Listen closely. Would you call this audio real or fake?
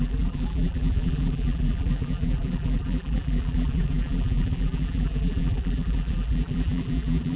fake